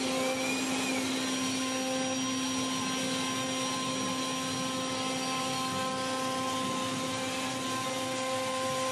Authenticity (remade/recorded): recorded